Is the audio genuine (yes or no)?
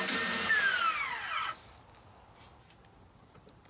yes